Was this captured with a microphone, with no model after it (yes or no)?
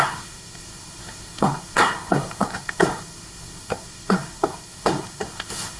no